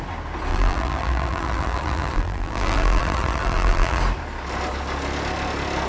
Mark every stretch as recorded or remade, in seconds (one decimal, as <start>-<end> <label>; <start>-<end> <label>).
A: 0.0-0.5 recorded; 0.5-4.0 remade; 4.0-5.9 recorded